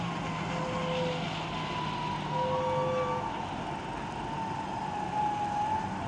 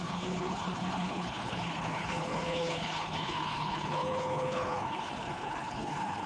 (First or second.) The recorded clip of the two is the first